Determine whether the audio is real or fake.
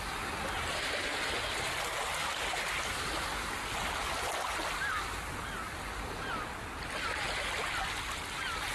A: real